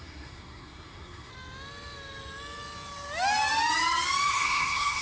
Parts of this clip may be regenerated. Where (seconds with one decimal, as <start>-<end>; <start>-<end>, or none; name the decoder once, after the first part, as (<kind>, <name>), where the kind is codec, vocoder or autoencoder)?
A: 0.0-1.3 (codec, SNAC); 4.3-5.0